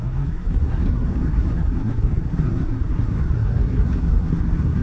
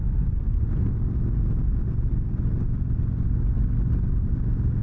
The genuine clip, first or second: second